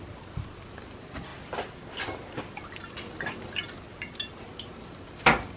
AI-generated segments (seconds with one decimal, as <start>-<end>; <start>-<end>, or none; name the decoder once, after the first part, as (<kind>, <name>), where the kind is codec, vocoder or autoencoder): none